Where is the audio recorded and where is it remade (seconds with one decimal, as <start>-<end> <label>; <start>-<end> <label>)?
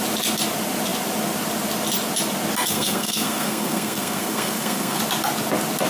0.0-2.7 recorded; 2.7-5.0 remade; 5.0-5.9 recorded